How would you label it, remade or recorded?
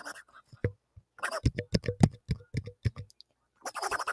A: recorded